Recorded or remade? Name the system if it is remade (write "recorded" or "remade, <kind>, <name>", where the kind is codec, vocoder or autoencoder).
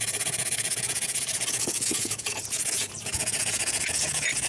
remade, vocoder, Vocos